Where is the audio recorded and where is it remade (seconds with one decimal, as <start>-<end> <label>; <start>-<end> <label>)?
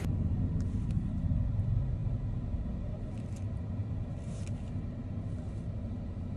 0.0-6.4 recorded